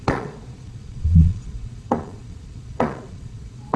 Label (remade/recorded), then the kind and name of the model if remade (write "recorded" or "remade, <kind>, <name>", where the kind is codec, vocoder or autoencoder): remade, vocoder, Vocos